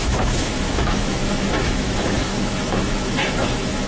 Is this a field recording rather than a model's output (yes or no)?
no